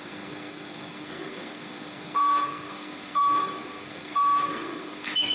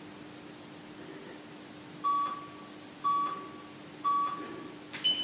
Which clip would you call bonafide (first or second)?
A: second